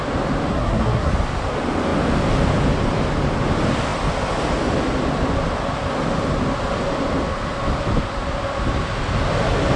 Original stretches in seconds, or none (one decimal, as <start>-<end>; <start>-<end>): 0.0-0.5; 1.1-9.8